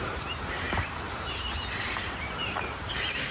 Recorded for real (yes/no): no